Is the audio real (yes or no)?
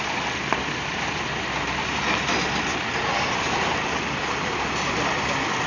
yes